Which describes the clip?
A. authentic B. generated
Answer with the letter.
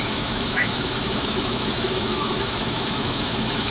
B